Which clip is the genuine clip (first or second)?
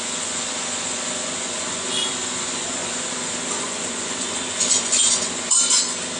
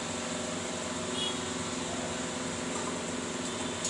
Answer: second